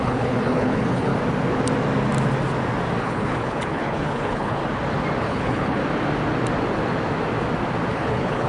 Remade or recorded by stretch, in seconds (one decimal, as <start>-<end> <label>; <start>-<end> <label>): 0.0-1.1 remade; 1.1-3.0 recorded; 3.0-4.6 remade; 4.6-5.2 recorded; 5.2-5.8 remade; 5.8-7.9 recorded; 7.9-8.5 remade

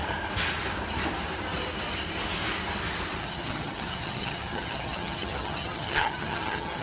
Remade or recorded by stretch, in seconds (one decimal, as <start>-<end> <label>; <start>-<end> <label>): 0.0-3.2 recorded; 3.2-6.8 remade

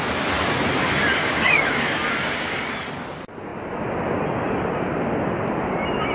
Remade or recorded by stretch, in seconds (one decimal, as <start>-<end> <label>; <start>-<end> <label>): 0.0-1.2 recorded; 1.2-2.6 remade; 2.6-6.1 recorded

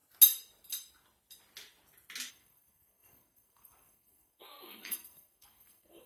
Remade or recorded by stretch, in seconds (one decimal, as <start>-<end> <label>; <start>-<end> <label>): 0.0-2.3 recorded; 2.3-6.1 remade

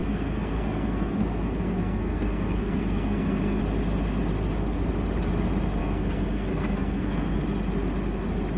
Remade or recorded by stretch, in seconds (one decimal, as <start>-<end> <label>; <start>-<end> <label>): 0.0-3.6 remade; 3.6-5.8 recorded; 5.8-7.4 remade; 7.4-8.6 recorded